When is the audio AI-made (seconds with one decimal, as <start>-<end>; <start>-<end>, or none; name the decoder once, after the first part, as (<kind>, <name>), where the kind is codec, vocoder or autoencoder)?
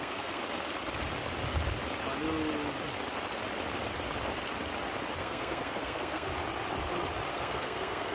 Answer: 0.0-0.4 (codec, SNAC); 5.2-6.3; 7.3-8.1